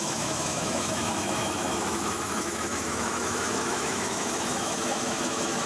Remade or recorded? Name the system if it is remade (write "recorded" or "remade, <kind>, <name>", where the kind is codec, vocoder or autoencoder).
remade, autoencoder, DAC-VAE